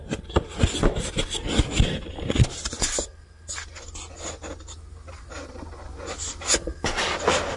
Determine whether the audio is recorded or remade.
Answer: recorded